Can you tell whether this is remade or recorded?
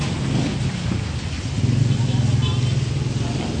recorded